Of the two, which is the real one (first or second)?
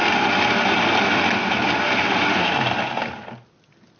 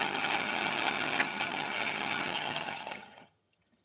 first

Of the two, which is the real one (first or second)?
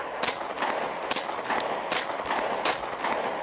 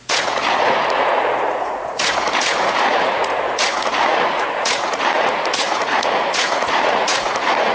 first